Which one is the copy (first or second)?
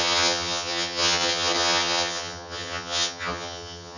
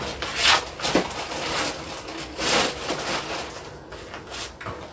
first